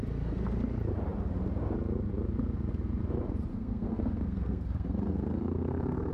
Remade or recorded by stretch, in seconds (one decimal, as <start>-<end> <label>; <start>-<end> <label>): 0.0-3.5 recorded; 3.5-6.1 remade